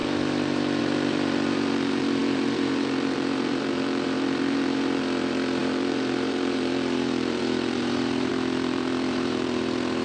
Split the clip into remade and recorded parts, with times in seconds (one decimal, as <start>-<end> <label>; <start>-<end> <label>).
0.0-10.0 remade